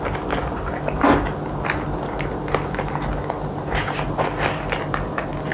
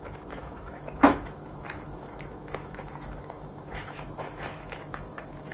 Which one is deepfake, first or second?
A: second